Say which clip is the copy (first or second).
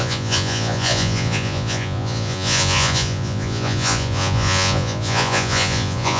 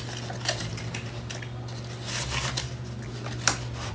first